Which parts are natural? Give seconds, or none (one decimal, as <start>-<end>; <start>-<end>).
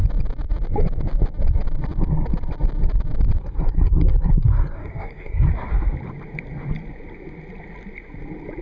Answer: 0.0-3.4; 5.5-8.6